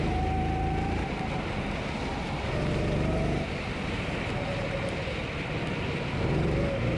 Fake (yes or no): no